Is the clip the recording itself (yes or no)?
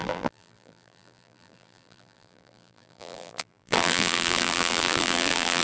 no